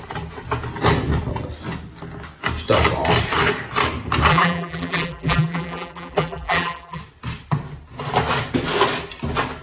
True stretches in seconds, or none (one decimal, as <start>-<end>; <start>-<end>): 0.0-4.3; 7.0-9.6